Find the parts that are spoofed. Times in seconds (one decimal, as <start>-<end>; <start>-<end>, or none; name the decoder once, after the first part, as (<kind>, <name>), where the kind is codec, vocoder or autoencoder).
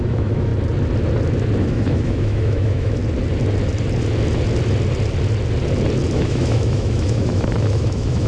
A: 0.0-0.5 (autoencoder, DAC-VAE); 1.6-3.0; 6.1-8.3